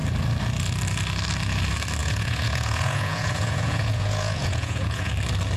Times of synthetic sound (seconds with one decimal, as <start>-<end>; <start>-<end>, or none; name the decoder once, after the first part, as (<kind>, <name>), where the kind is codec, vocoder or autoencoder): 2.0-5.1 (vocoder, Vocos)